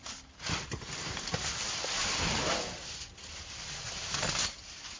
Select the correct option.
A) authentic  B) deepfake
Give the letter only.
A